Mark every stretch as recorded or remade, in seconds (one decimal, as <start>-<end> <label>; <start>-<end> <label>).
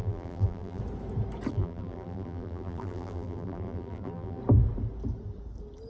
0.0-0.8 remade; 0.8-1.5 recorded; 1.5-4.4 remade; 4.4-5.9 recorded